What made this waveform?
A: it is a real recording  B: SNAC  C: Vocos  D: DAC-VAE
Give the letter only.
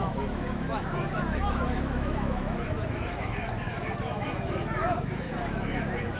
D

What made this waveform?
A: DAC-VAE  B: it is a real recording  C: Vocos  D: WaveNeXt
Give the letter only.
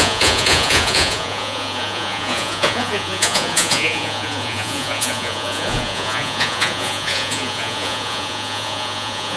C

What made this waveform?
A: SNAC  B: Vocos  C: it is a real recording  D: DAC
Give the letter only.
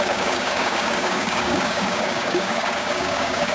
D